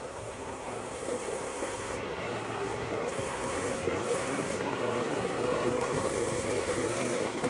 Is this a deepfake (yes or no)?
yes